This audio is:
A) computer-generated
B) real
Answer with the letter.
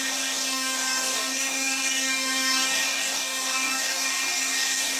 A